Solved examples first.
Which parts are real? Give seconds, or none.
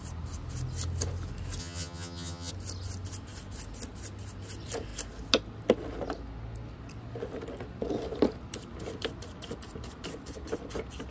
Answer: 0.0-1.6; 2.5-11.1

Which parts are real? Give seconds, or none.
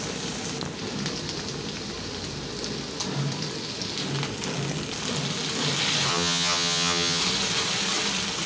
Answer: 0.0-6.1; 7.2-8.5